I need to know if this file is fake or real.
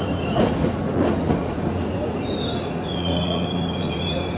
fake